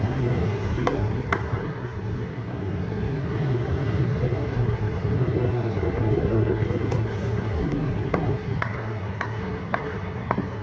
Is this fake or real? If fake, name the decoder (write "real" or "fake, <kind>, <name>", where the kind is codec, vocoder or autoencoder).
fake, codec, SNAC